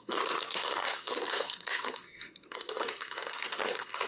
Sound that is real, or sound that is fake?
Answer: fake